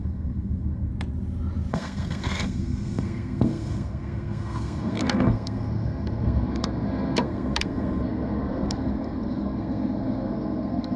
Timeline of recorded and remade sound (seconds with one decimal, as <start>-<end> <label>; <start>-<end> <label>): 0.0-0.9 remade; 0.9-1.7 recorded; 1.7-11.0 remade